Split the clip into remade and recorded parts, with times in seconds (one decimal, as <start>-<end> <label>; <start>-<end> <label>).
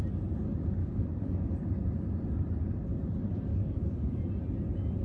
0.0-0.8 recorded; 0.8-1.4 remade; 1.4-3.5 recorded; 3.5-4.2 remade; 4.2-5.0 recorded